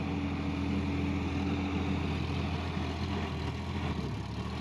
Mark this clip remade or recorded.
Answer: recorded